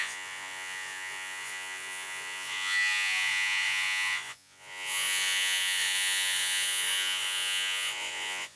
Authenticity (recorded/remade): remade